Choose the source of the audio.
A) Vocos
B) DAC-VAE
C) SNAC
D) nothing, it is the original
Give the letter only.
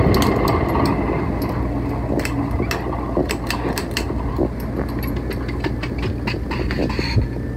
D